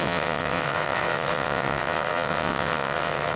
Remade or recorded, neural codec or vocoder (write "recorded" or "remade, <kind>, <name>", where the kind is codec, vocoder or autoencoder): remade, vocoder, WaveNeXt